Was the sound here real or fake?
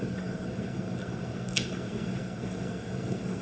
fake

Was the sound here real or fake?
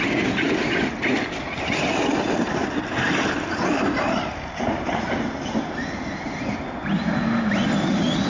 real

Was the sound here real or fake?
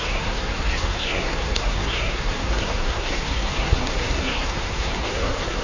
fake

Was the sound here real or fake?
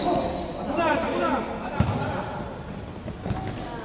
real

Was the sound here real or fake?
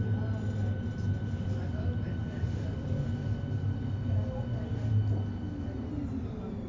real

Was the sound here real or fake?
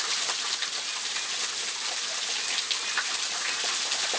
real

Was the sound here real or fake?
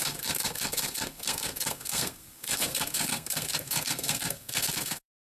fake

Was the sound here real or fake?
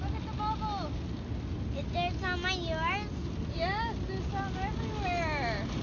real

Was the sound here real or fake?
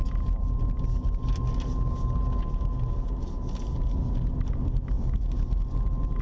real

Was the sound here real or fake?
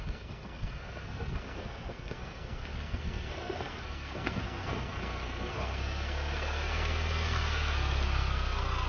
fake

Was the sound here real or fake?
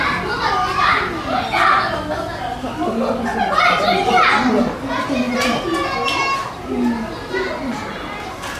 real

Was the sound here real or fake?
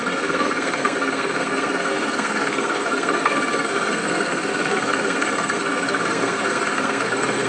fake